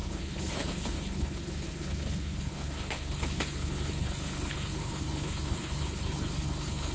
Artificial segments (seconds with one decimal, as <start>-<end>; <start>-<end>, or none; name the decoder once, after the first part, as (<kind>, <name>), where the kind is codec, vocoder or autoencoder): 0.0-6.9 (codec, HILCodec)